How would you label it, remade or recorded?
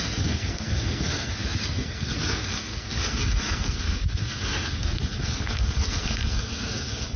remade